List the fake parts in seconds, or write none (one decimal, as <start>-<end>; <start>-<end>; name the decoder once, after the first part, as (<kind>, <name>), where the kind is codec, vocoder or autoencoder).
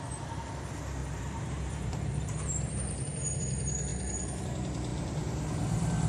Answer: 1.0-3.4 (vocoder, BigVGAN v2); 4.9-6.1